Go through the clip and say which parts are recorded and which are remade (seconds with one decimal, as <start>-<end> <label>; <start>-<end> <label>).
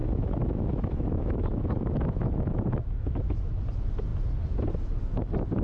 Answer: 0.0-3.4 remade; 3.4-5.6 recorded